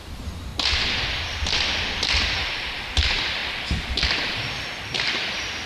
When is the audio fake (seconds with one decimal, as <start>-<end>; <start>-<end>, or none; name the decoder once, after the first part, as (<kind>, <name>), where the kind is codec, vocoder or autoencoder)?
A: 0.0-0.5 (vocoder, BigVGAN v2); 2.2-3.4; 4.3-5.7